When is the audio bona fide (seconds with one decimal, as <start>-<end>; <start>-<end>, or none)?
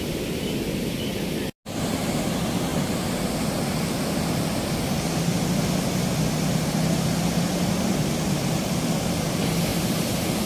0.0-10.5